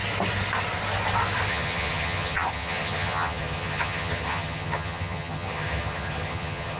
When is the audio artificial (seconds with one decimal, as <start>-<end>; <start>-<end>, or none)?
1.5-6.8